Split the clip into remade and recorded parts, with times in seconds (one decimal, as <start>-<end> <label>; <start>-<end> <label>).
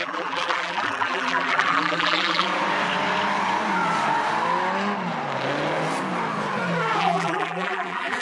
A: 0.0-2.5 remade; 2.5-7.0 recorded; 7.0-8.2 remade